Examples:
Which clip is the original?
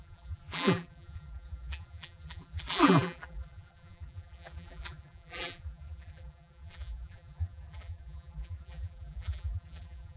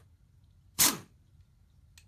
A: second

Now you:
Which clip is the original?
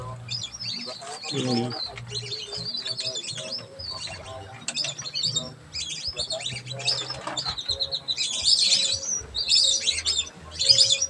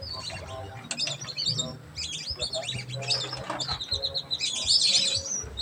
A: second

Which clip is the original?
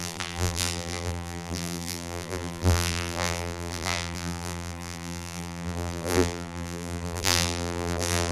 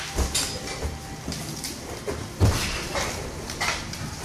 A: second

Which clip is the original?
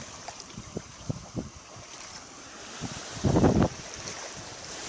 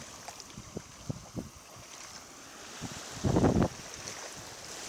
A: second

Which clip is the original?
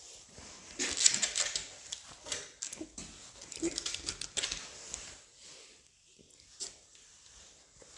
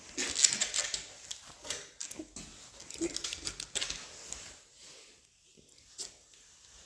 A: second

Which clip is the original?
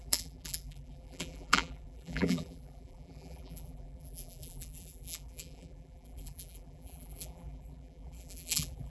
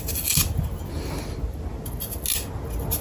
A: second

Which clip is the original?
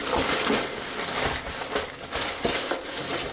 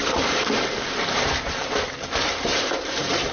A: first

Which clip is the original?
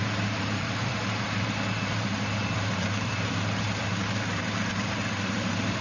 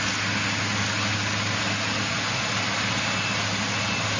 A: second